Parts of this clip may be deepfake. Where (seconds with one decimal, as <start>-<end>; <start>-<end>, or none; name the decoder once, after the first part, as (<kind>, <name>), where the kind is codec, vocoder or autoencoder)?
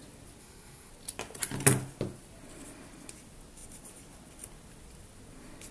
0.4-0.9 (codec, SNAC)